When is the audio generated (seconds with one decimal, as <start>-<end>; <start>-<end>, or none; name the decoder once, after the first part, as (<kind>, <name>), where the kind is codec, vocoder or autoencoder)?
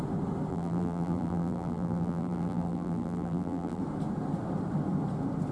0.5-3.8 (vocoder, BigVGAN v2)